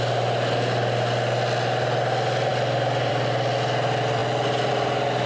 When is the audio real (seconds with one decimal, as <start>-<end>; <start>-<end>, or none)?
0.0-5.3